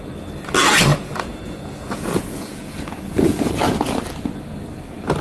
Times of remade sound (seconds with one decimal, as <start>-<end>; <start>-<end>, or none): 0.9-4.0